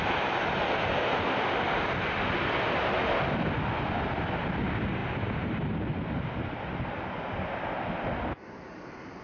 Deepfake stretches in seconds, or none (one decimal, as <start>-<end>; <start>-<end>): none